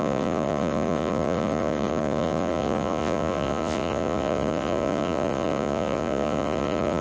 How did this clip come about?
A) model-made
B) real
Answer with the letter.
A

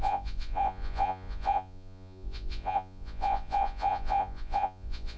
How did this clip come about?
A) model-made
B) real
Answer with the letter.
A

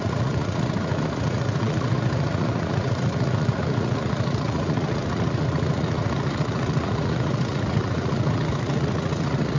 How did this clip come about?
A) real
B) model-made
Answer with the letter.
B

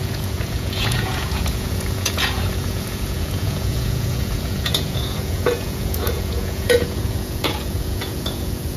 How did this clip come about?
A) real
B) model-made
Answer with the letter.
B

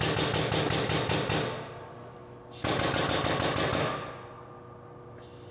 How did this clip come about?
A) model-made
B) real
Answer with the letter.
B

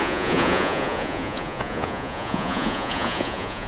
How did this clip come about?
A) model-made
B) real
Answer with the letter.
A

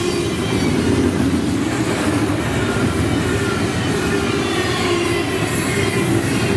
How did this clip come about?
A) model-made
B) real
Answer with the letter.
B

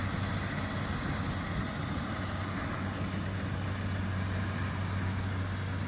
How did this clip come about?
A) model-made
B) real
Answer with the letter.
B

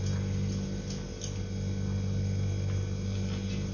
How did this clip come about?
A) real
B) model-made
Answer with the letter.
A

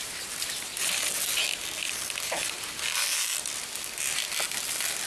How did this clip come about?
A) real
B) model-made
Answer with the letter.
A